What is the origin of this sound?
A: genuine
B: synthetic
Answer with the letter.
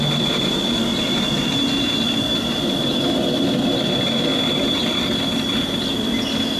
A